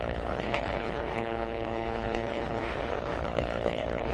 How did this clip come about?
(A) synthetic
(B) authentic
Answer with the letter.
A